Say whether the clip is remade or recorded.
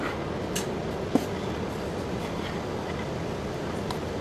recorded